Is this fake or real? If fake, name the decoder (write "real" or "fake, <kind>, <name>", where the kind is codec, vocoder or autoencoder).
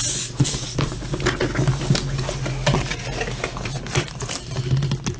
real